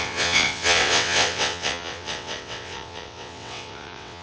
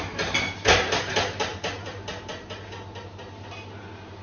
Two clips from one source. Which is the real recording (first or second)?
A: second